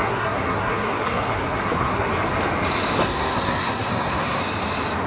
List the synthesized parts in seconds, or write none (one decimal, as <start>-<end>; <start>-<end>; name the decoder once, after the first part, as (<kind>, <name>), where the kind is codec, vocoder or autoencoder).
0.0-2.1 (codec, SNAC); 3.0-4.4